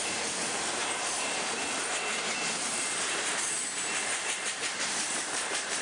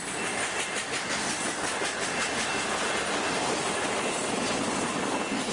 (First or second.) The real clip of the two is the second